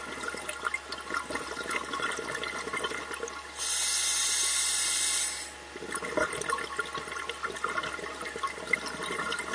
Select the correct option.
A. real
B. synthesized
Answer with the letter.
A